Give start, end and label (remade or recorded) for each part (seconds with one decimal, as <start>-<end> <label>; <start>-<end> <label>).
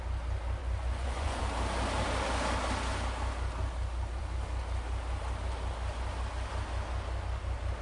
0.0-0.6 recorded; 0.6-1.4 remade; 1.4-7.8 recorded